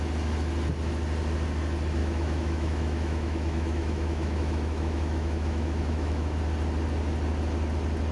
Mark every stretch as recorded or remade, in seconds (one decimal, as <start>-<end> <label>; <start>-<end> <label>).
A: 0.0-2.0 recorded; 2.0-6.4 remade; 6.4-8.1 recorded